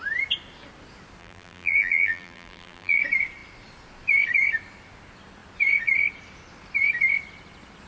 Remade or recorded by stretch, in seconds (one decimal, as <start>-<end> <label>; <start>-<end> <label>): 0.0-1.2 recorded; 1.2-3.0 remade; 3.0-7.9 recorded